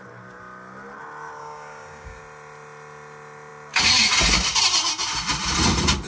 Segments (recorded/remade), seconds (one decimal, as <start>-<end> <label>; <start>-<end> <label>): 0.0-1.4 recorded; 1.4-2.2 remade; 2.2-6.1 recorded